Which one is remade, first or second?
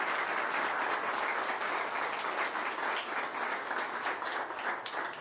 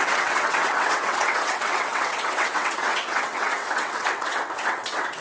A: second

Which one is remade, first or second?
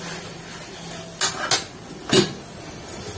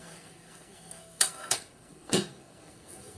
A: second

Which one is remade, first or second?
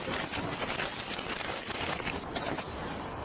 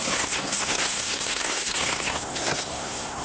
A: second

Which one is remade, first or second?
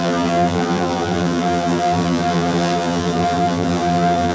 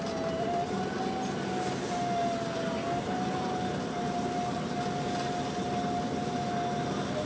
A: first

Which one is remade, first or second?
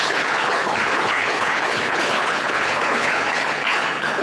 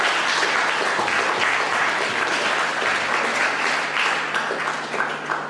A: first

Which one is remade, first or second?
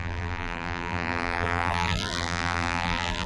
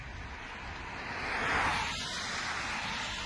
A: first